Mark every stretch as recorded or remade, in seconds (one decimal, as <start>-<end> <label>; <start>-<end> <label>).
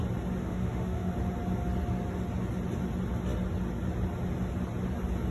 0.0-0.4 recorded; 0.4-1.1 remade; 1.1-5.3 recorded